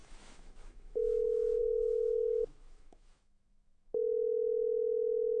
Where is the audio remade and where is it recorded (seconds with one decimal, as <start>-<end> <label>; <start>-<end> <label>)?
0.0-5.4 remade